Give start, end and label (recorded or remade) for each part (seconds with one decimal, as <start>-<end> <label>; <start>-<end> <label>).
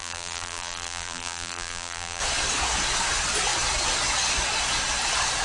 0.0-2.2 remade; 2.2-5.4 recorded